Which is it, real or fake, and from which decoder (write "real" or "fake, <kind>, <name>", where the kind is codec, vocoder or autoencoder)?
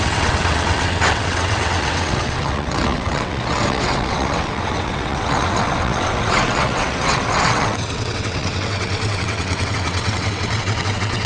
fake, vocoder, WaveNeXt